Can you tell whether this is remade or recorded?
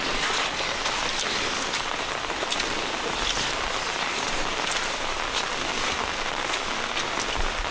recorded